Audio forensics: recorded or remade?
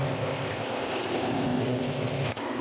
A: remade